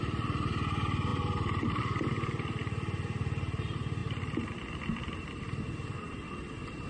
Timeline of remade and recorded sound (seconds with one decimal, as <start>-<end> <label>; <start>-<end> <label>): 0.0-6.9 recorded